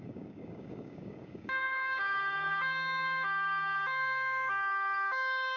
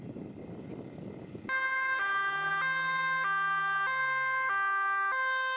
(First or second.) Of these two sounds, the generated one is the first